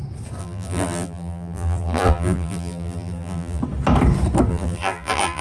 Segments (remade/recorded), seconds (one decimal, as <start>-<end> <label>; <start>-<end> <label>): 0.0-0.4 recorded; 0.4-3.6 remade; 3.6-4.5 recorded; 4.5-5.4 remade